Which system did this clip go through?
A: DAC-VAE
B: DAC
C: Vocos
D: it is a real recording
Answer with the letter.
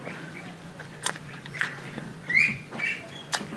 C